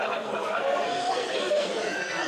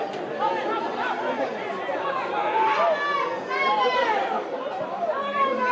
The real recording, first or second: second